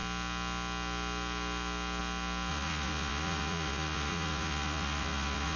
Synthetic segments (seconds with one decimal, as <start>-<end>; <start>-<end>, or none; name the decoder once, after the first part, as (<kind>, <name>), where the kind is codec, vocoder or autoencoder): 2.5-5.6 (vocoder, Vocos)